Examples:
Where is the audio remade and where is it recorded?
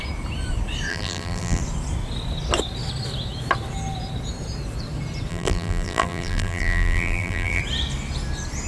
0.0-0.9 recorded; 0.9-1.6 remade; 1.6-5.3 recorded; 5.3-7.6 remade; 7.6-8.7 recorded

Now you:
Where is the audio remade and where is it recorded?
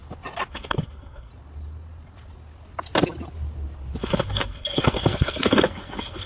0.0-0.5 recorded; 0.5-1.3 remade; 1.3-4.0 recorded; 4.0-6.3 remade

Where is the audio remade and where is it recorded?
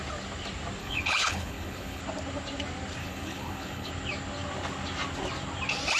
0.0-0.8 recorded; 0.8-2.0 remade; 2.0-3.0 recorded; 3.0-3.9 remade; 3.9-6.0 recorded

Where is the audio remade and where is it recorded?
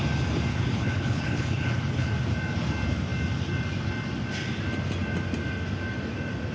0.0-0.5 recorded; 0.5-2.1 remade; 2.1-6.5 recorded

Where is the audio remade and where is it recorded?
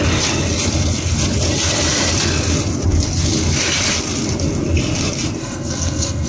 0.0-5.4 recorded; 5.4-6.3 remade